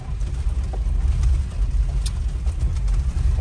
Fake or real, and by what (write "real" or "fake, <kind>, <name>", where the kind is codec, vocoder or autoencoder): real